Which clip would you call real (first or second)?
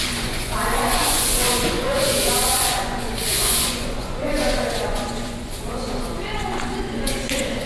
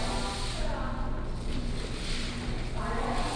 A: second